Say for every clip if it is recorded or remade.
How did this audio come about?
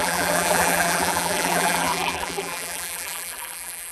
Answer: remade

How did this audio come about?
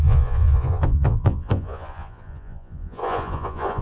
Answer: remade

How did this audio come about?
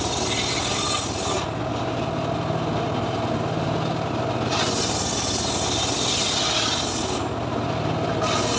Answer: recorded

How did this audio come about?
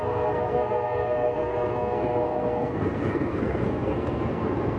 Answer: remade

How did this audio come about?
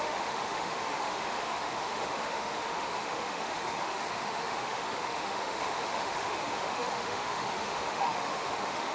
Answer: remade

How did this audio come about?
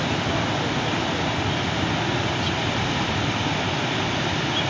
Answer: recorded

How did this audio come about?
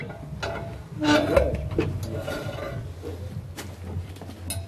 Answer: recorded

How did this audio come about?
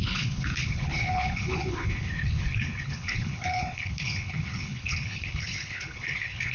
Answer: remade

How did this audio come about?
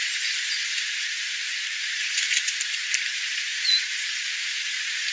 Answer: remade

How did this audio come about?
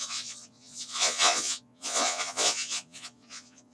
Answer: remade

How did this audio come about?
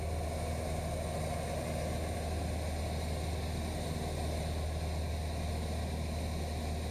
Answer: recorded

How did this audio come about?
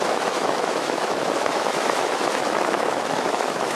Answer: remade